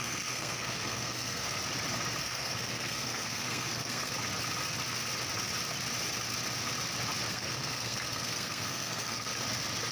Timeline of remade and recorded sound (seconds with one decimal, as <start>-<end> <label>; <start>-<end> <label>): 0.0-1.6 remade; 1.6-2.2 recorded; 2.2-4.1 remade; 4.1-7.3 recorded; 7.3-9.3 remade; 9.3-9.9 recorded